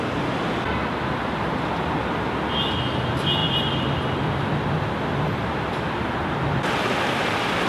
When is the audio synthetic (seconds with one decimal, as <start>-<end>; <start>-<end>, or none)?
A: none

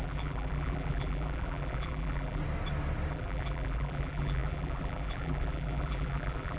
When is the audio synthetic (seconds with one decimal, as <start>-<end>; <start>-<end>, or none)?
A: 0.0-2.4; 3.1-6.6

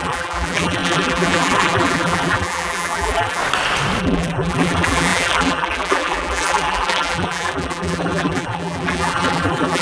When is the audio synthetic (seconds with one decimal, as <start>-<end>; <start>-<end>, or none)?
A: 0.0-3.4; 4.0-9.8

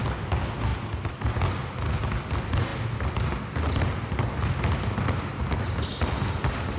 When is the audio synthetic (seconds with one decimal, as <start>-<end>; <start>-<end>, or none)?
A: 0.7-1.4

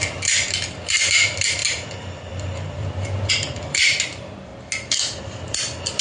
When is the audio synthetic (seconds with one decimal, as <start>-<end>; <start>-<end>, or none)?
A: 0.0-4.5; 5.2-6.0

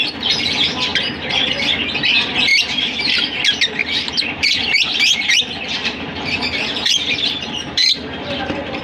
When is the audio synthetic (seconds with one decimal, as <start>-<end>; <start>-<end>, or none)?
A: 0.9-1.5; 2.5-3.0; 3.8-8.8

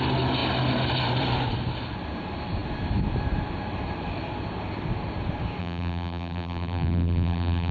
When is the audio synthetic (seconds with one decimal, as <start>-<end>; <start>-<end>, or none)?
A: 5.6-7.7

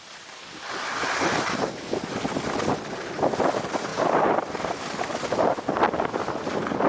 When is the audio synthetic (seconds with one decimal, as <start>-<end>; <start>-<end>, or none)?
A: 3.9-5.1